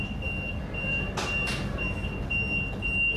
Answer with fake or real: real